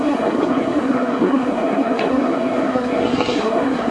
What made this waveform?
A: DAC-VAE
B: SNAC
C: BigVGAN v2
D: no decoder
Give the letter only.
B